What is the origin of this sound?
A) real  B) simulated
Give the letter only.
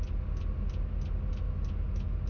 A